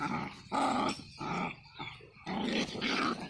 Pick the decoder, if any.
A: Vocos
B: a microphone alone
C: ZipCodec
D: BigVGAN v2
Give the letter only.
B